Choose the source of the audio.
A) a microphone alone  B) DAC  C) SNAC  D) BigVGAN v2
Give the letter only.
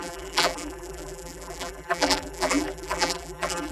D